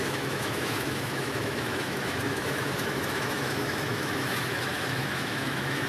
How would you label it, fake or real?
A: fake